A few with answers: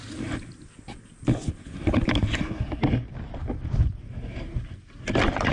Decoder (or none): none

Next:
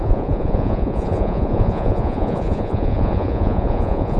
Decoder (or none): vocoder, Vocos